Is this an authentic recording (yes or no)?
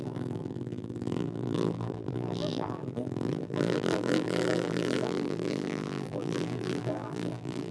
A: no